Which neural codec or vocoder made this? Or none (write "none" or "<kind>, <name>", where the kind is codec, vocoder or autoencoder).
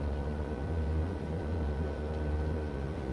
vocoder, Vocos